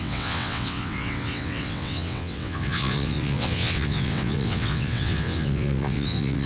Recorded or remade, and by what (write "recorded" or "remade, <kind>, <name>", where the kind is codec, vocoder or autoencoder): remade, vocoder, WaveNeXt